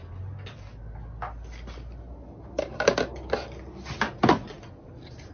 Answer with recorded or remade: recorded